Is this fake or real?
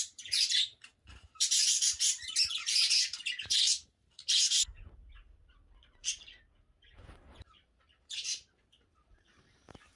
fake